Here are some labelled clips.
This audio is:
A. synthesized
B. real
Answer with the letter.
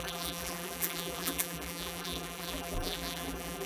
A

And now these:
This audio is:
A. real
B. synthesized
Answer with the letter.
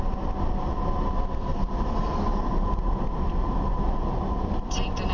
A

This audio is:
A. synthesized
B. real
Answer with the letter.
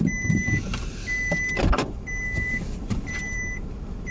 A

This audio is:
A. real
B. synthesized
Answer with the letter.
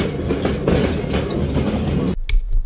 A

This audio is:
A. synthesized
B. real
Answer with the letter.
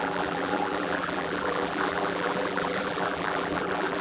A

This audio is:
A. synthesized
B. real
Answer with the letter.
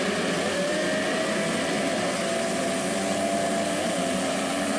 B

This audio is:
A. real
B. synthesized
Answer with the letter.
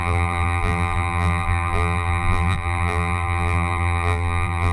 B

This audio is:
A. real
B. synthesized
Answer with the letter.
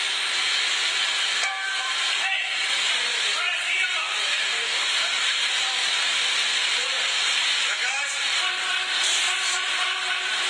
B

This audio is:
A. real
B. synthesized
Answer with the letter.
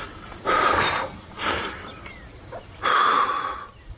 B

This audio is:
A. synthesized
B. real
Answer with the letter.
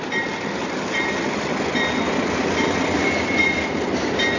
A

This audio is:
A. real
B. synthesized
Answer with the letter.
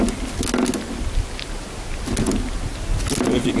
A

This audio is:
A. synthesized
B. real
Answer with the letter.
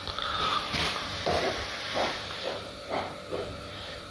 A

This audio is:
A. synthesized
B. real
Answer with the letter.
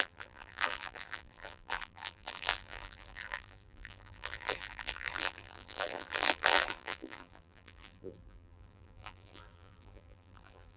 A